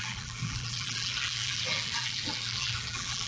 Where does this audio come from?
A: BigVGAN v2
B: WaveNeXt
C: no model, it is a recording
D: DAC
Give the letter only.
A